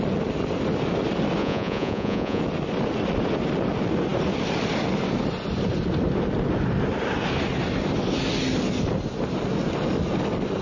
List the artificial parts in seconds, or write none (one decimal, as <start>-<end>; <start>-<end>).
1.4-2.4